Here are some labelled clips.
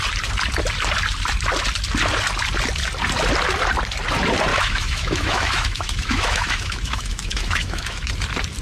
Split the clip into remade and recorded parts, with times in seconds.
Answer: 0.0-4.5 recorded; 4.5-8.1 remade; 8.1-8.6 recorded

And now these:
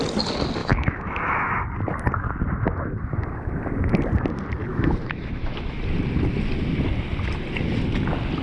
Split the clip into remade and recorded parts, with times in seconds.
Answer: 0.0-0.6 recorded; 0.6-1.5 remade; 1.5-4.7 recorded; 4.7-5.8 remade; 5.8-8.4 recorded